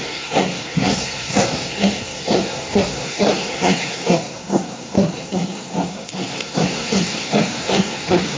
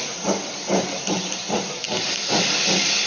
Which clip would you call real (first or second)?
second